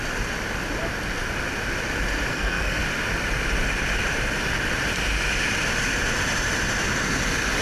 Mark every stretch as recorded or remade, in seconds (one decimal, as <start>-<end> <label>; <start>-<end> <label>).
0.0-2.3 recorded; 2.3-2.8 remade; 2.8-7.6 recorded